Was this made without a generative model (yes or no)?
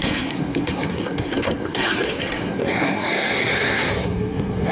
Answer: no